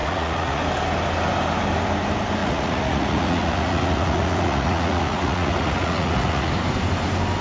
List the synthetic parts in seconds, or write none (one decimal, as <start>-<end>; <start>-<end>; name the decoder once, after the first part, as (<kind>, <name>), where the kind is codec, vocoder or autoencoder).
0.0-0.6 (vocoder, Vocos); 2.4-6.5